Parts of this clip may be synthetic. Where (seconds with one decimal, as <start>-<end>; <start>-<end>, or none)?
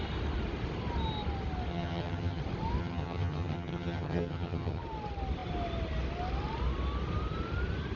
1.7-2.4; 2.8-4.8